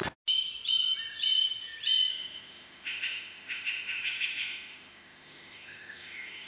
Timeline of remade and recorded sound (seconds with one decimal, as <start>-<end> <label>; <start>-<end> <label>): 0.0-2.1 recorded; 2.1-6.5 remade